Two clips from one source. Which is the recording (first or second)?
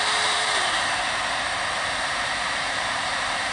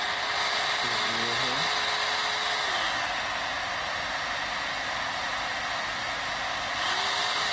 second